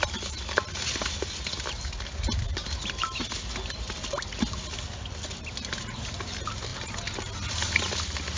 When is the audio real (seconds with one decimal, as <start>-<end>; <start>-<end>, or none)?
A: 0.0-8.4